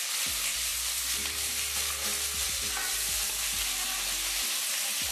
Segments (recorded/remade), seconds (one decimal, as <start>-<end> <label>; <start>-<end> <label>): 0.0-0.7 recorded; 0.7-1.9 remade; 1.9-5.1 recorded